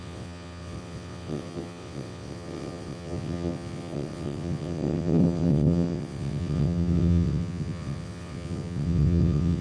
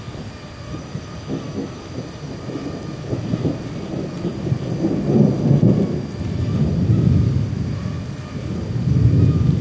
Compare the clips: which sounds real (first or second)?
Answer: second